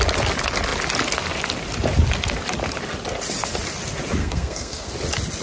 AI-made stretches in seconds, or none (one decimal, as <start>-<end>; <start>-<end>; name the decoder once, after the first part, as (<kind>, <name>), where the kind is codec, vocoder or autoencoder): 4.2-4.9 (codec, SNAC)